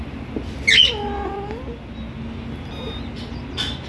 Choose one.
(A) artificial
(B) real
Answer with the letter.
B